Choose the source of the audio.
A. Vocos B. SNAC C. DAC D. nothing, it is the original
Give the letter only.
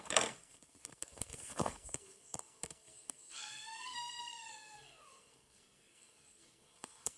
B